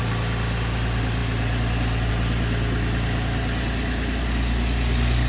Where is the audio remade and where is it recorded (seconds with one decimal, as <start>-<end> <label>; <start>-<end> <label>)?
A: 0.0-5.3 recorded

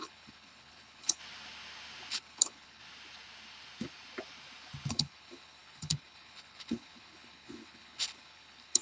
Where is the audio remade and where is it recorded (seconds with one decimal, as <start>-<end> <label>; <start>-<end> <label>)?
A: 0.0-1.2 remade; 1.2-2.1 recorded; 2.1-2.8 remade; 2.8-4.9 recorded; 4.9-8.8 remade

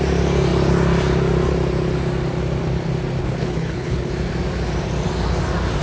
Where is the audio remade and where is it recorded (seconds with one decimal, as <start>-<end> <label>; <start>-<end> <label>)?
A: 0.0-3.2 recorded; 3.2-4.1 remade; 4.1-5.8 recorded

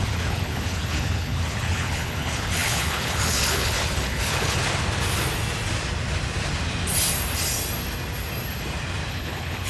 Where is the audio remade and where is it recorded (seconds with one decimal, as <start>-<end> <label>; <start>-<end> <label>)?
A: 0.0-4.6 remade; 4.6-9.1 recorded; 9.1-9.7 remade